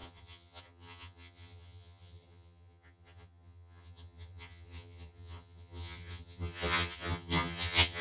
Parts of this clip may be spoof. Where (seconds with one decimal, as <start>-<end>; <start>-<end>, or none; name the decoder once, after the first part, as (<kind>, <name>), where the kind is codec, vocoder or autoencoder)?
0.0-8.0 (vocoder, HiFi-GAN)